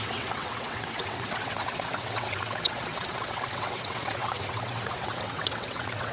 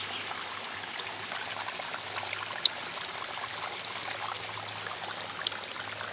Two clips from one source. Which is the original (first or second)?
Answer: second